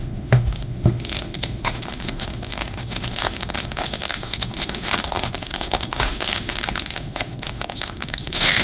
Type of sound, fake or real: fake